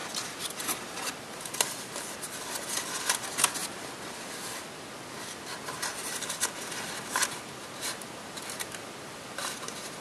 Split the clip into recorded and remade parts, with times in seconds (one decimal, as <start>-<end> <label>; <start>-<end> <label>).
0.0-3.6 recorded; 3.6-4.1 remade; 4.1-10.0 recorded